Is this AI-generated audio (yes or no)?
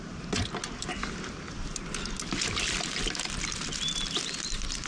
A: no